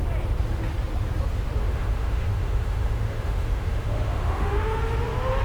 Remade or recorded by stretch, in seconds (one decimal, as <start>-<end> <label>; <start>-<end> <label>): 0.0-1.6 recorded; 1.6-4.8 remade; 4.8-5.4 recorded